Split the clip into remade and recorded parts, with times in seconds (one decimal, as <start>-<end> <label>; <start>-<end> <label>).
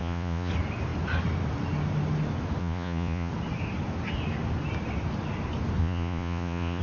0.0-0.5 remade; 0.5-2.6 recorded; 2.6-3.3 remade; 3.3-5.8 recorded; 5.8-6.8 remade